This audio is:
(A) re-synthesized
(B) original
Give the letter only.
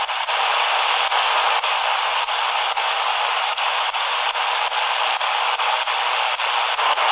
B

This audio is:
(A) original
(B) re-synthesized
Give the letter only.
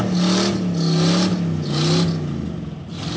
A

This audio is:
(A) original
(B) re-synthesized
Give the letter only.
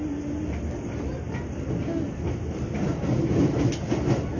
A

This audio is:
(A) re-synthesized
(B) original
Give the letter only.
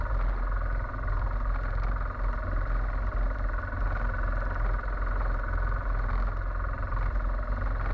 B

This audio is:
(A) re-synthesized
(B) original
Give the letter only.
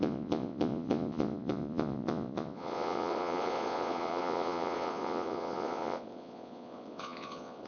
A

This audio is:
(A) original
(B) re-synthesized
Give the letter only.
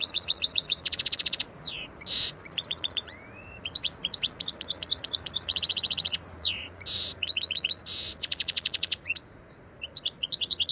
B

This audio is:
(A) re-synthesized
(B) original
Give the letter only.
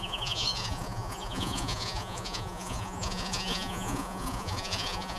A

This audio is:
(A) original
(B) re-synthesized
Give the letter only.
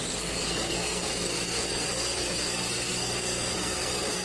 B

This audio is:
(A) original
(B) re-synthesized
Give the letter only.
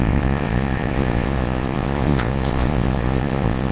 B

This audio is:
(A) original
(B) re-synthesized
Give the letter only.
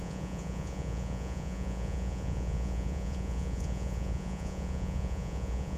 B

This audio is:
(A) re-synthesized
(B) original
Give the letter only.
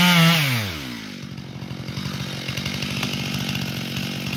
B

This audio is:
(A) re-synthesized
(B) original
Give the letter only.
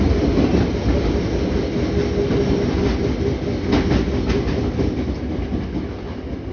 B